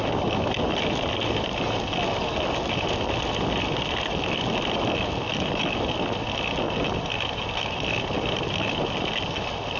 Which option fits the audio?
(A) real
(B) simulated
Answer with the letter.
A